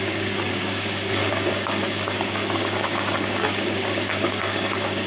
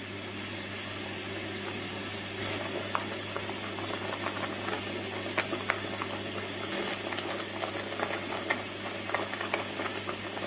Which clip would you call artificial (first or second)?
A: first